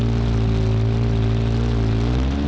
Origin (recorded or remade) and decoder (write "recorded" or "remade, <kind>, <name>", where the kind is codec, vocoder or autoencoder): recorded